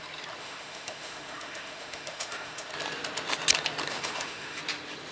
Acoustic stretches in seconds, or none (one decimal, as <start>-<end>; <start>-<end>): 0.0-0.4; 2.7-3.9; 4.6-5.1